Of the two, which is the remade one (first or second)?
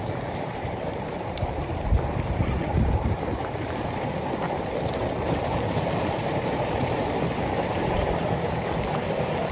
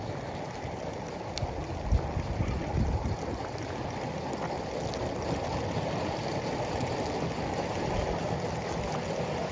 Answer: first